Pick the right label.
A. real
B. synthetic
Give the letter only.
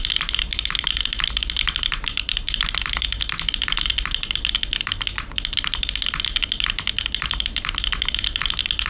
A